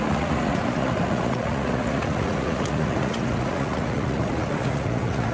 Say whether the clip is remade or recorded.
remade